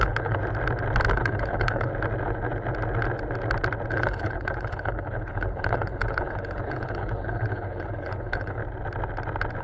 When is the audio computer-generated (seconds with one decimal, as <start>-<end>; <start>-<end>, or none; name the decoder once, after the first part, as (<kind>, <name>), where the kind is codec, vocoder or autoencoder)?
0.0-0.4 (codec, HILCodec); 1.1-1.9; 3.9-8.6